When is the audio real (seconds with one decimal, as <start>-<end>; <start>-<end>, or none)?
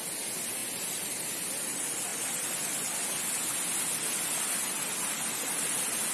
0.0-6.1